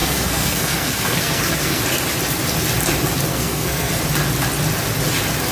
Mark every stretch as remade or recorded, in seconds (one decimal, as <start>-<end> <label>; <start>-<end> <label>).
0.0-1.8 remade; 1.8-3.3 recorded; 3.3-4.0 remade; 4.0-5.5 recorded